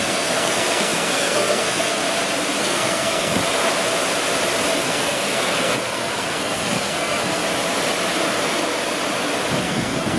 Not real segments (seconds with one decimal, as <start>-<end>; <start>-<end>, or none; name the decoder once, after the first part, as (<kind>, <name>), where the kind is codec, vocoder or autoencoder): 0.0-2.0 (codec, SNAC); 2.6-3.4; 4.8-7.4; 9.6-10.2